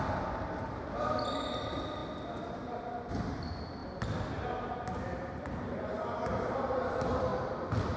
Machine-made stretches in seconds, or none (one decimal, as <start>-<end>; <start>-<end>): 0.0-2.0; 3.1-3.8; 5.4-8.0